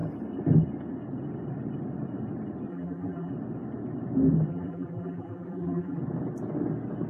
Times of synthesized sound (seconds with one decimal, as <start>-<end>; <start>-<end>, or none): 2.7-3.3; 4.5-6.0